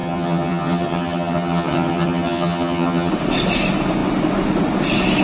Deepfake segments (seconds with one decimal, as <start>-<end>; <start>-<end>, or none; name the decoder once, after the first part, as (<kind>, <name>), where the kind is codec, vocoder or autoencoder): 0.0-3.1 (vocoder, HiFi-GAN)

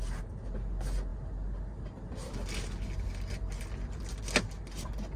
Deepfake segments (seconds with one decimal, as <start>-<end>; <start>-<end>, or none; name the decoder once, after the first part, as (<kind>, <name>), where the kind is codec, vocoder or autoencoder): none

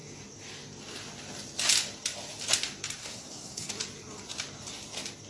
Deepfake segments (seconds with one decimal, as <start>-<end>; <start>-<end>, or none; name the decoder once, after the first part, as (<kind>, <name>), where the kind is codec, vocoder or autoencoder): 3.0-3.7 (codec, SNAC)

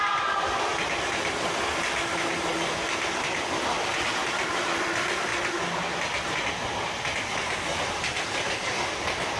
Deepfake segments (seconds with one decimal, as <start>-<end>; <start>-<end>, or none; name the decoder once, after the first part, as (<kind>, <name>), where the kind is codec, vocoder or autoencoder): none